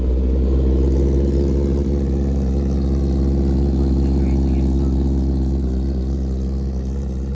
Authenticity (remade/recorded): recorded